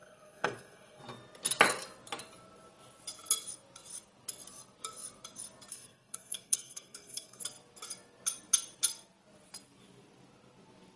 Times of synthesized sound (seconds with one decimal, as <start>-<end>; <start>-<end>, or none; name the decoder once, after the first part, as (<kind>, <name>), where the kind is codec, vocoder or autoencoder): 0.0-1.0 (codec, SNAC); 5.7-7.4

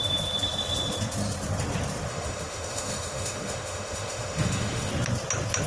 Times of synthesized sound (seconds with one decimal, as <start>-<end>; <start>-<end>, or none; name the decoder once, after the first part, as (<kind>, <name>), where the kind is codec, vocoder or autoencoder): 2.1-4.9 (autoencoder, DAC-VAE)